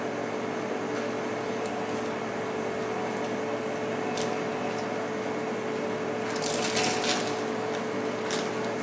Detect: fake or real real